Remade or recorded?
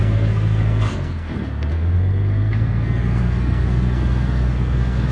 remade